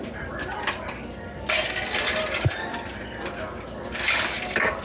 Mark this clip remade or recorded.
recorded